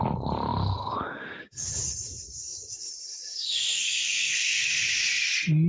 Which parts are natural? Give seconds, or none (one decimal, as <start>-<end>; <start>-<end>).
0.0-3.8; 4.6-5.7